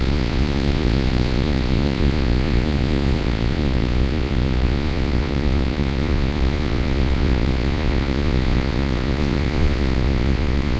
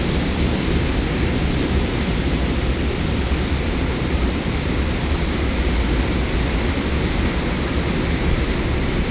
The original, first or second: second